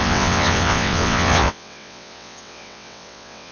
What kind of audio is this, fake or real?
fake